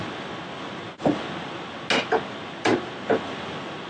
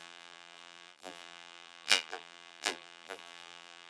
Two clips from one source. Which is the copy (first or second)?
second